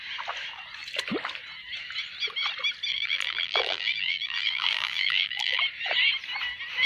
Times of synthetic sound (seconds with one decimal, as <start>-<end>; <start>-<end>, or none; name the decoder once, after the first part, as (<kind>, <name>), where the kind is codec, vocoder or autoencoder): 2.9-5.6 (vocoder, BigVGAN v2)